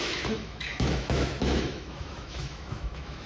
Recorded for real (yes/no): no